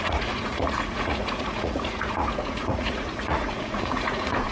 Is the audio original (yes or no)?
no